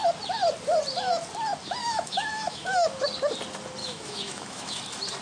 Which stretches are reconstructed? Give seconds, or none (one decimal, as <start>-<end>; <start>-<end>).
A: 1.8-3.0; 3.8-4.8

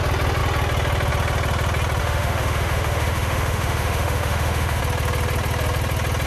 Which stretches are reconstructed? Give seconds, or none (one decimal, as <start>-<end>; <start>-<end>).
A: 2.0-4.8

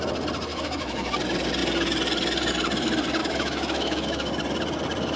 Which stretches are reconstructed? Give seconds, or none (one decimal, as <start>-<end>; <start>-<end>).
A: 0.5-1.1; 3.2-4.3